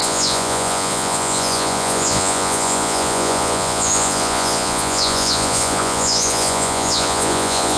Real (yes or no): no